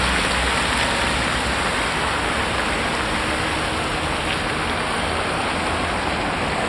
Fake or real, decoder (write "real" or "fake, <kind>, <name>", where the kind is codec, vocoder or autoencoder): real